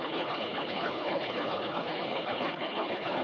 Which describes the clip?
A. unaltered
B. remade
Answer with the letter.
B